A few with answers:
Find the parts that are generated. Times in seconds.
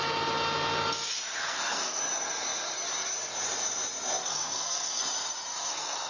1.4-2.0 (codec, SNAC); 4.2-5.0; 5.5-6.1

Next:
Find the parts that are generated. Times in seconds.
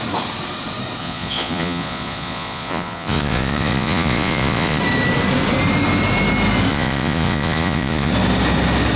1.0-4.8 (vocoder, Vocos); 6.7-8.1